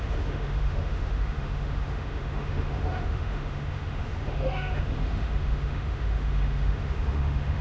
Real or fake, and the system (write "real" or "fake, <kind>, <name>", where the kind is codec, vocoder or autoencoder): fake, autoencoder, DAC-VAE